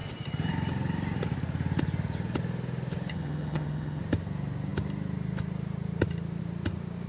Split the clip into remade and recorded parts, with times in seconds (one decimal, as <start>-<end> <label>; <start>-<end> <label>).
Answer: 0.0-3.1 recorded; 3.1-4.0 remade; 4.0-7.1 recorded